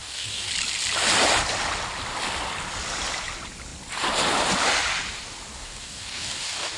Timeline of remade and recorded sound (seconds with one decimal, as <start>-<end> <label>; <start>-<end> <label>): 0.0-0.5 remade; 0.5-5.5 recorded; 5.5-6.8 remade